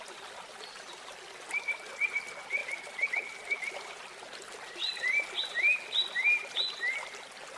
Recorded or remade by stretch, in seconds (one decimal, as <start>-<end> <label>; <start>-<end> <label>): 0.0-2.6 recorded; 2.6-5.4 remade; 5.4-7.6 recorded